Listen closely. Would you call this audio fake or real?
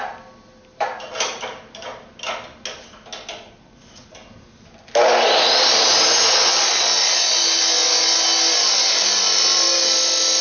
real